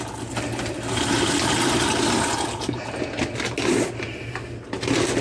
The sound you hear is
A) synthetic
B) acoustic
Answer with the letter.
B